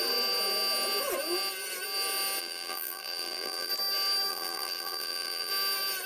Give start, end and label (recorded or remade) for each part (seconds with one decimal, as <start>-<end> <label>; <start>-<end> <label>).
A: 0.0-2.4 recorded; 2.4-3.7 remade; 3.7-4.3 recorded; 4.3-5.5 remade; 5.5-6.1 recorded